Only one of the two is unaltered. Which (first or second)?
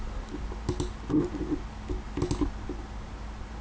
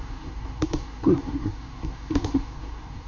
first